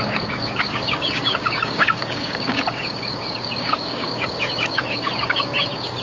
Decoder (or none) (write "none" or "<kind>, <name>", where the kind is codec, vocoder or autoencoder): codec, DAC